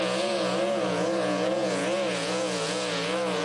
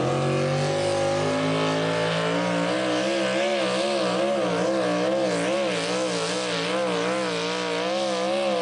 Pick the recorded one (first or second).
second